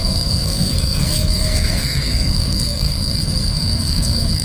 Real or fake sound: fake